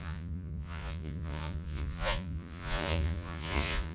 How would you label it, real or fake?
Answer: fake